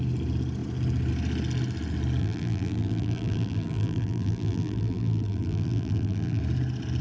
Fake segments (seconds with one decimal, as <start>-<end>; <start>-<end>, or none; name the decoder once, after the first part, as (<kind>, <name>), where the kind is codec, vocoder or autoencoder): 2.2-6.4 (vocoder, BigVGAN v2)